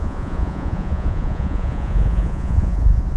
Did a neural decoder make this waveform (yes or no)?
yes